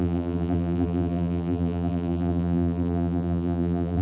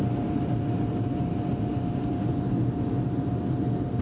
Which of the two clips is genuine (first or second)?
second